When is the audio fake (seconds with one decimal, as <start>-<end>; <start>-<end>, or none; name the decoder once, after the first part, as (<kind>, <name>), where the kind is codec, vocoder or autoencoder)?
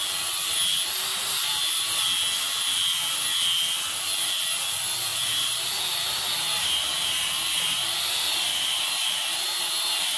1.1-2.0 (vocoder, BigVGAN v2); 5.1-10.2